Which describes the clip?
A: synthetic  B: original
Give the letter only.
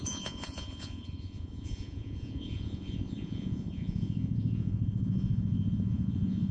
A